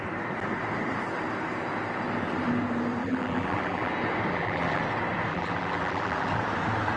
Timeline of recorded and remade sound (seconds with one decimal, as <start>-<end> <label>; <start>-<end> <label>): 0.0-3.0 recorded; 3.0-3.9 remade; 3.9-4.3 recorded; 4.3-4.8 remade; 4.8-5.3 recorded; 5.3-6.4 remade; 6.4-7.0 recorded